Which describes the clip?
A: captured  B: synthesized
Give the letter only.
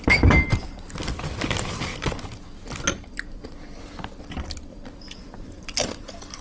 A